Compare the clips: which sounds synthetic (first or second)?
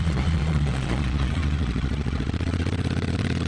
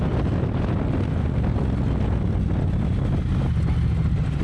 first